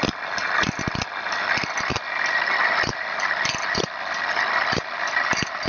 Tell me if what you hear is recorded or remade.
recorded